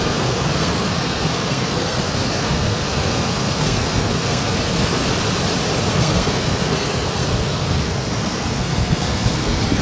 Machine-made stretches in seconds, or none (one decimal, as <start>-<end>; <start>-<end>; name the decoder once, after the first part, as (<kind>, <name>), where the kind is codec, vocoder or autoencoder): 0.0-5.0 (codec, SNAC); 5.9-9.8